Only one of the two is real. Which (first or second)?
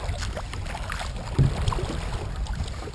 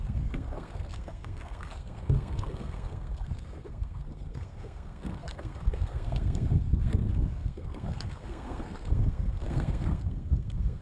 first